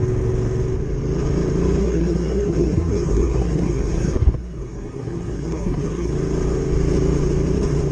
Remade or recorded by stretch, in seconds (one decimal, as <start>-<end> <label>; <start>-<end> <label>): 0.0-1.8 recorded; 1.8-6.1 remade; 6.1-7.9 recorded